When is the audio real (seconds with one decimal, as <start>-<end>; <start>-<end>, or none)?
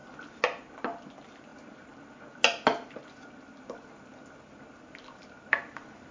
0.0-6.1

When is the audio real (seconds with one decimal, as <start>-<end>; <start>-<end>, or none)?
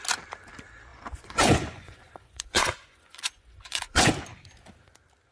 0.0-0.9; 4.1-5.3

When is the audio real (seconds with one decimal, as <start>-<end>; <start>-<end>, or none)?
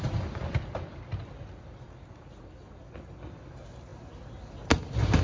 0.0-5.2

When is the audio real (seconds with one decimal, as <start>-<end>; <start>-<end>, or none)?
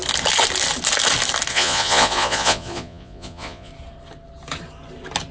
0.0-1.5; 3.7-5.3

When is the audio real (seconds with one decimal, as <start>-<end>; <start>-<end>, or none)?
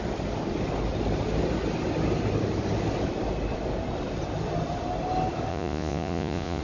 0.0-5.5